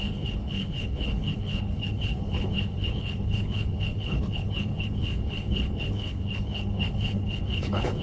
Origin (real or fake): fake